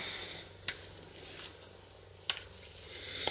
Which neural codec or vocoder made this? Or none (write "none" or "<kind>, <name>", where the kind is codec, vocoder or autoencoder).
none